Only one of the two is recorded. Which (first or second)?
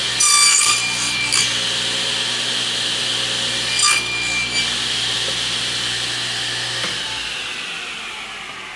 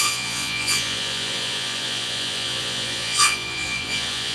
first